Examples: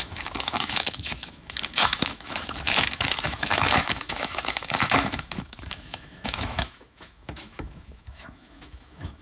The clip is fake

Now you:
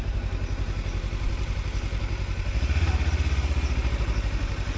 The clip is real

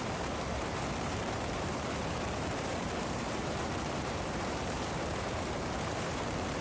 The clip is fake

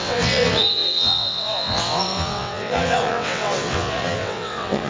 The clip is fake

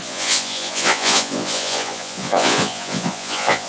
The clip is fake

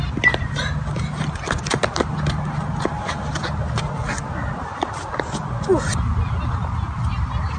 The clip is real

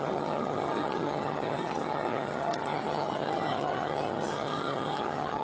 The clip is fake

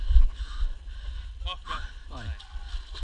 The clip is real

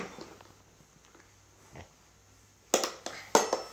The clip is real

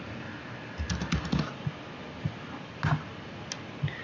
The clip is real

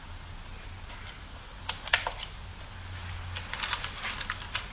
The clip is real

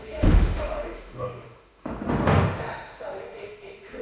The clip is fake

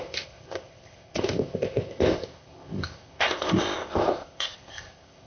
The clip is fake